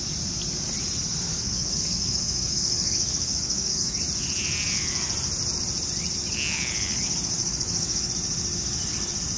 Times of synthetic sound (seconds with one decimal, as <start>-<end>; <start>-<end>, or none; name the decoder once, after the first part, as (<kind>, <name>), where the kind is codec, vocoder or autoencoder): 1.3-4.0 (codec, DAC); 7.4-8.1